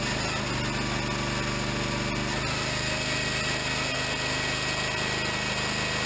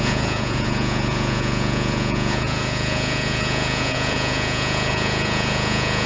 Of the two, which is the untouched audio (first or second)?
first